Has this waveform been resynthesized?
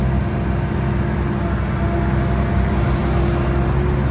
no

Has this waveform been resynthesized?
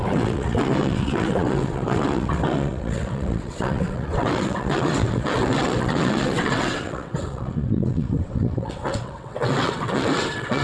yes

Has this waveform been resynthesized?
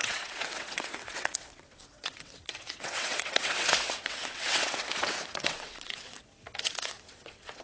yes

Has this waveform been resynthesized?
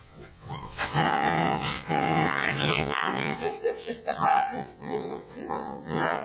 yes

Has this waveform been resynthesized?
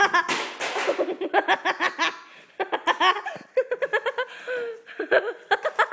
no